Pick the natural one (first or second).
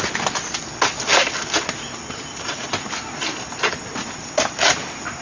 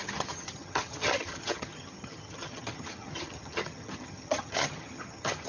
first